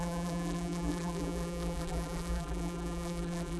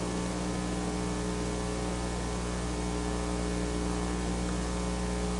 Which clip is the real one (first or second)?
second